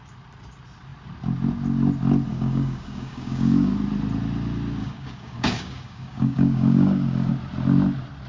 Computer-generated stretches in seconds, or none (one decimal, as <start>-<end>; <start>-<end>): 2.3-3.7; 4.8-7.3